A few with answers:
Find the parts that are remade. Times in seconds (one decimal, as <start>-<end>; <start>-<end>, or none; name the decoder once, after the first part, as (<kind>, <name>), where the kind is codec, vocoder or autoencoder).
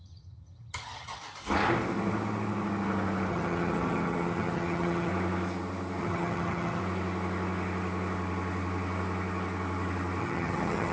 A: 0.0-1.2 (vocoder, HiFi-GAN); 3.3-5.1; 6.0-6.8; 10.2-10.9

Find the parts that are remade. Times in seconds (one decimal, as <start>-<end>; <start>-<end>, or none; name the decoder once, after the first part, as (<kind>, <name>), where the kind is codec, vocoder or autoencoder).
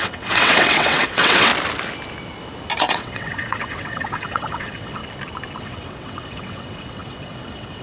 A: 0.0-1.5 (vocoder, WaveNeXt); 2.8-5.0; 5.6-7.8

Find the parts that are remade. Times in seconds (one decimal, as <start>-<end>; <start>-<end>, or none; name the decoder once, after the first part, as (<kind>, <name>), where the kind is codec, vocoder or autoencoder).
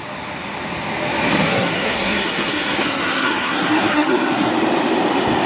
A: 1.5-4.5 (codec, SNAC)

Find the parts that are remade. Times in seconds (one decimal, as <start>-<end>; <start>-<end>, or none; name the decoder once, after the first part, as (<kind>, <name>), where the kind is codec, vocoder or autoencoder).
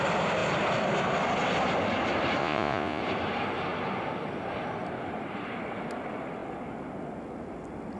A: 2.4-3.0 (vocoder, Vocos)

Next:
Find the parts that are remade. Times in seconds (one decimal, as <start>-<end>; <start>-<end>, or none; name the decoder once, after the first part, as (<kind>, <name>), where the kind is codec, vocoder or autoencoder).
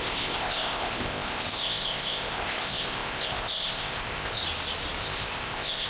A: 0.0-4.4 (codec, ZipCodec); 5.0-5.9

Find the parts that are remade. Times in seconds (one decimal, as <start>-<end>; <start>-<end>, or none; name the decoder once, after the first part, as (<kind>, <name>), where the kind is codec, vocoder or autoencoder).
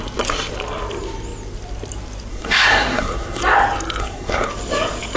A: 2.3-3.4 (codec, SNAC); 4.0-4.5